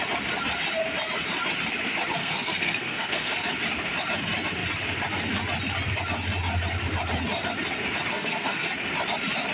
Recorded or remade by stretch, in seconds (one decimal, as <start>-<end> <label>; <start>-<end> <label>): 0.0-2.2 recorded; 2.2-3.3 remade; 3.3-8.1 recorded; 8.1-8.7 remade; 8.7-9.5 recorded